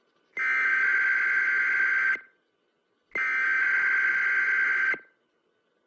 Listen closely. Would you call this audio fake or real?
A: real